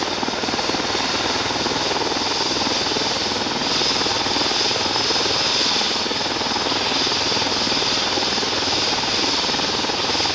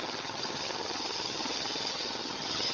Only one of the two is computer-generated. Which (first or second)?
second